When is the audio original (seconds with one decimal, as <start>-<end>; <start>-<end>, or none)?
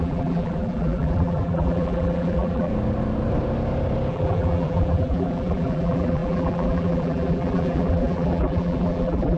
2.7-4.1